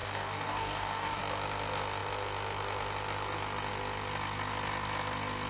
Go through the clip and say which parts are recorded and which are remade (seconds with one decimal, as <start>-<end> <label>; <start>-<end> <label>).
0.0-1.2 remade; 1.2-5.5 recorded